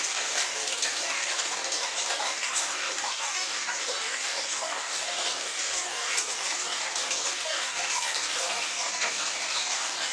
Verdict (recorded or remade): remade